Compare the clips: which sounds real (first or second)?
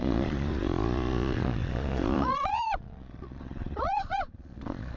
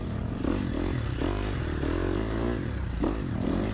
second